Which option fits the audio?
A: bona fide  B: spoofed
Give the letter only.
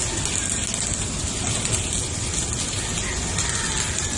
A